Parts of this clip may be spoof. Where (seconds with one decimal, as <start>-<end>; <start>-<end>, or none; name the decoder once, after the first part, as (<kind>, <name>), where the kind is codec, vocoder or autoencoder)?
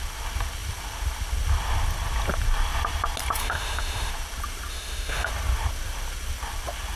3.4-4.1 (autoencoder, DAC-VAE); 4.7-5.3